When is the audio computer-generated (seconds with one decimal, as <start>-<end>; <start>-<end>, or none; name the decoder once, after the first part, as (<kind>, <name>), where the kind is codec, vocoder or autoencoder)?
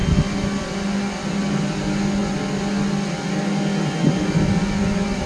none